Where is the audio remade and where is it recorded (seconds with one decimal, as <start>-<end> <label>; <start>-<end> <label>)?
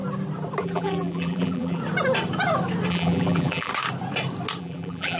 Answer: 0.0-0.6 recorded; 0.6-1.8 remade; 1.8-2.9 recorded; 2.9-3.7 remade; 3.7-4.6 recorded; 4.6-5.2 remade